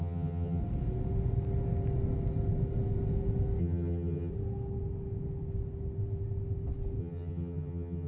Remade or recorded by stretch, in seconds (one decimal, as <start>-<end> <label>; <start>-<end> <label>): 0.0-0.6 remade; 0.6-3.6 recorded; 3.6-4.3 remade; 4.3-7.0 recorded; 7.0-8.1 remade